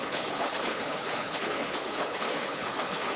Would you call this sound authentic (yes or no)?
no